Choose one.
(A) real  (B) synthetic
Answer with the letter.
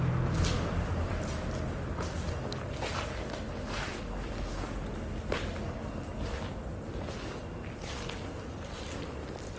A